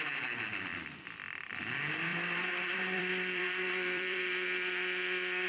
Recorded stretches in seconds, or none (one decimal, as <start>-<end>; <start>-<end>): 0.0-0.7; 1.5-2.1; 4.2-5.5